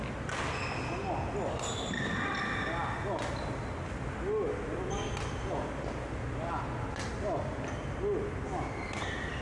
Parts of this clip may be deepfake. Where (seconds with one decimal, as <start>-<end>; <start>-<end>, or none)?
none